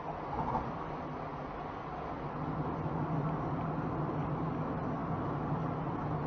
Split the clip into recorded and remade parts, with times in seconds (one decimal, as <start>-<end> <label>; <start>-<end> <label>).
0.0-6.3 recorded